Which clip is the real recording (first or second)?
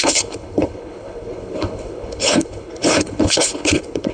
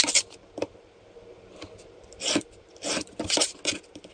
second